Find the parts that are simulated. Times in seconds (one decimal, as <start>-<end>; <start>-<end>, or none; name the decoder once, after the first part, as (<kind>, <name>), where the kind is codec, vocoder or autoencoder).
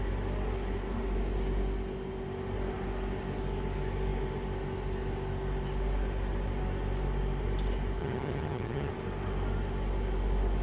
8.0-8.9 (vocoder, HiFi-GAN)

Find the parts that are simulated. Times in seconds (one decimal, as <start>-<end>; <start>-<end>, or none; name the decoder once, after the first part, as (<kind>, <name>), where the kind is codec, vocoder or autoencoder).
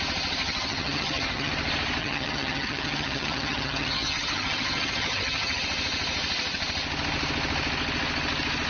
0.4-1.5 (vocoder, HiFi-GAN); 2.0-5.6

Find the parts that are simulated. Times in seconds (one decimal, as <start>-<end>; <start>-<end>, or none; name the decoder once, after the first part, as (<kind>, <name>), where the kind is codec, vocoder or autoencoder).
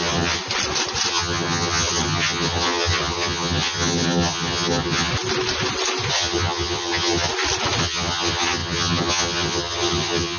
0.0-0.4 (vocoder, HiFi-GAN); 1.1-5.1; 6.1-7.3; 7.8-10.4